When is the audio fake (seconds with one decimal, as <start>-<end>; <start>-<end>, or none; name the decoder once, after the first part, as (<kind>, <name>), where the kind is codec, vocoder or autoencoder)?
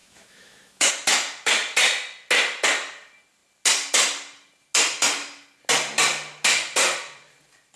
0.0-0.9 (autoencoder, DAC-VAE)